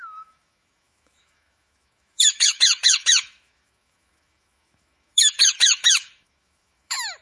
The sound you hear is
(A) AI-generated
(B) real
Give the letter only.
A